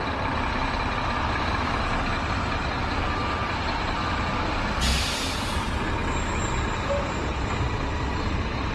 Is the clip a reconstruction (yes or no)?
no